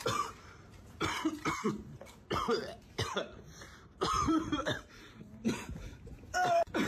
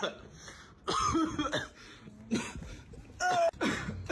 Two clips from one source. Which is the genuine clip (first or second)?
second